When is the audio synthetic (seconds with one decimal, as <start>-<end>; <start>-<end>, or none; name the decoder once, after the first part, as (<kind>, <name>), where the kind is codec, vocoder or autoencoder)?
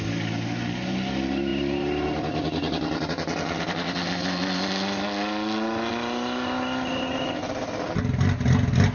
none